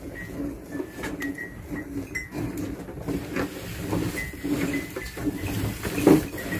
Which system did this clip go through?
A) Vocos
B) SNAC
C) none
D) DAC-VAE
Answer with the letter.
C